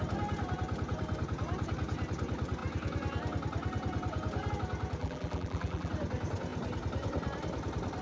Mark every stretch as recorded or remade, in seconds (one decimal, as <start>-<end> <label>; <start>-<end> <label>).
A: 0.0-5.0 recorded; 5.0-5.9 remade; 5.9-8.0 recorded